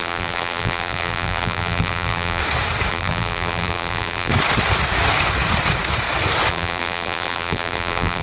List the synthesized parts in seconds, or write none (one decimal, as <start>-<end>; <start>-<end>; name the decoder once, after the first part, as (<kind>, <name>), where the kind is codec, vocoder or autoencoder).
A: 0.0-2.4 (vocoder, BigVGAN v2); 2.9-4.3; 6.5-8.2